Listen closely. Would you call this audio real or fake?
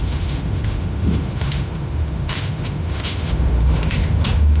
fake